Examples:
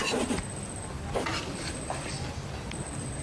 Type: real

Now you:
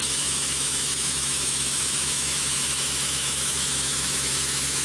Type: fake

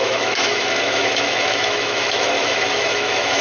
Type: fake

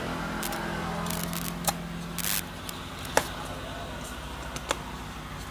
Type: real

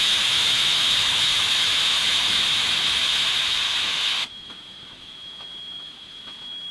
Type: fake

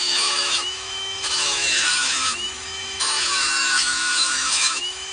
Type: fake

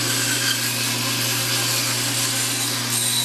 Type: real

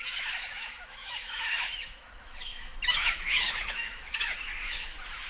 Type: fake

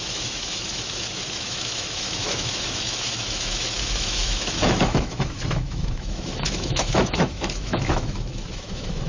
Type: fake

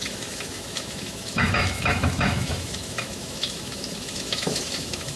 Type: fake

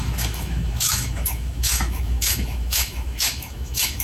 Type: fake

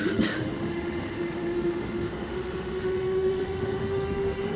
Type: fake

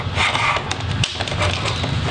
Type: real